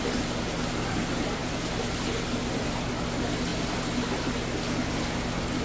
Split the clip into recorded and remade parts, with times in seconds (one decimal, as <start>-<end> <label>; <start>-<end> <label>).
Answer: 0.0-5.6 recorded